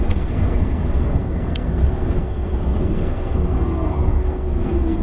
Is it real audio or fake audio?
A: fake